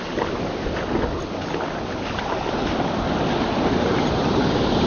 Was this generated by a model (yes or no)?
no